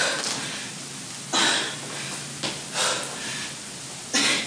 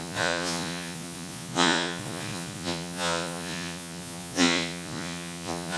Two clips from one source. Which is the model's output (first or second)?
second